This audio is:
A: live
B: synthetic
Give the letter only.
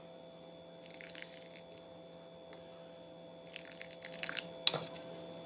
A